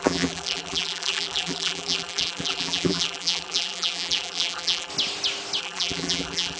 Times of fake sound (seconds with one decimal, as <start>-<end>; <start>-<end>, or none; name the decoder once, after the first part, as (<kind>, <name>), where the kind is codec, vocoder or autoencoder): 0.0-4.9 (vocoder, BigVGAN v2); 5.6-6.6